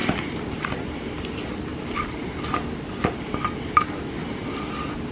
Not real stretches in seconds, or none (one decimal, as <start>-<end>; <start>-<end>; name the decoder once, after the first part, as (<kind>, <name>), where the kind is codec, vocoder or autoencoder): none